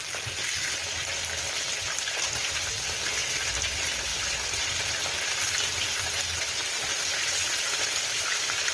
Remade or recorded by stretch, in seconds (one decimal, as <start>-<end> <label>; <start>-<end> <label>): 0.0-8.7 recorded